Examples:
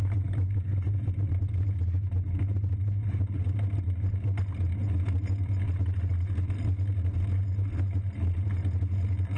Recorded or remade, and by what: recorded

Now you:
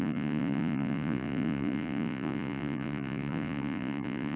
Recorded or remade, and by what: remade, vocoder, Vocos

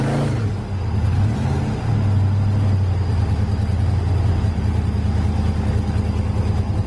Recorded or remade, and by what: recorded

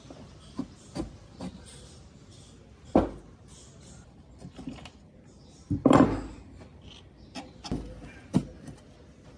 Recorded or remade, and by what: recorded